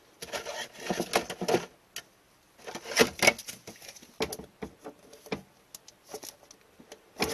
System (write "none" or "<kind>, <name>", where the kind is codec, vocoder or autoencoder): none